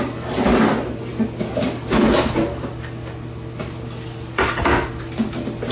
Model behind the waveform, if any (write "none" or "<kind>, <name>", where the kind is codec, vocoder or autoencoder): none